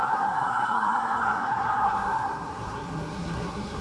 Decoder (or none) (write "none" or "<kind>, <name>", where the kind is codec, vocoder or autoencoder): codec, SNAC